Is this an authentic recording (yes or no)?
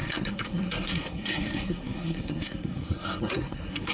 no